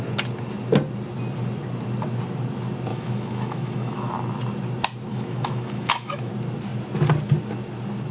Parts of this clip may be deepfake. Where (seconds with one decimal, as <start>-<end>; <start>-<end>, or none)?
2.9-4.1; 5.1-6.3